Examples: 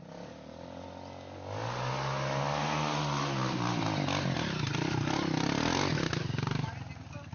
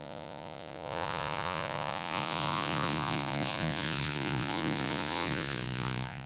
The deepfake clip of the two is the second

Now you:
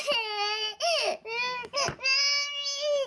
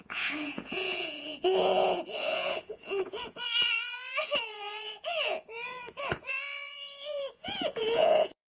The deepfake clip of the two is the second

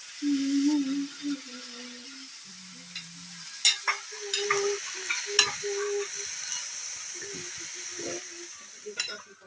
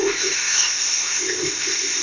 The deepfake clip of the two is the second